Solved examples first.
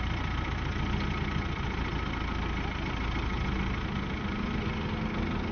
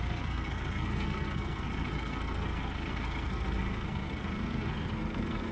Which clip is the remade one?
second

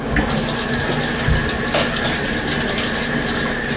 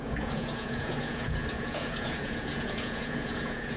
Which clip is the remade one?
second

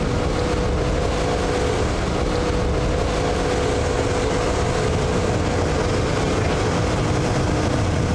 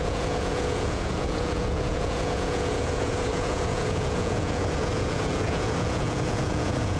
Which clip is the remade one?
second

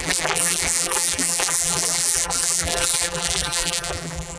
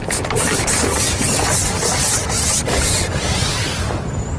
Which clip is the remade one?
first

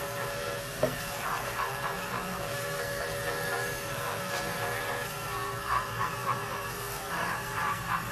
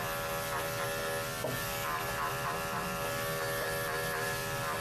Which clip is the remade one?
first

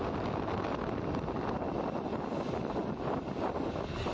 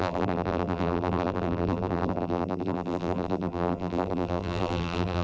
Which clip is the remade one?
second